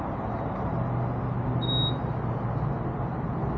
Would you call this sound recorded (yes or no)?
yes